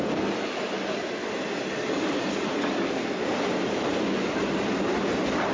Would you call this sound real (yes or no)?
yes